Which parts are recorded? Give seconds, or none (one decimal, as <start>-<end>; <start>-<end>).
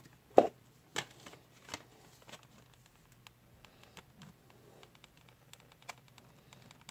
0.0-6.9